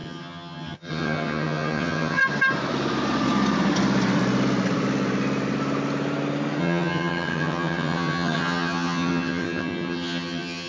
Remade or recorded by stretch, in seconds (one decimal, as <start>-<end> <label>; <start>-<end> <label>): 0.0-2.2 remade; 2.2-6.6 recorded; 6.6-10.7 remade